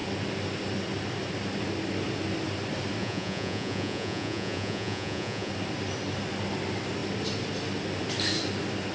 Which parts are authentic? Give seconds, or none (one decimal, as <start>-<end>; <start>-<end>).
0.0-3.0; 5.5-8.9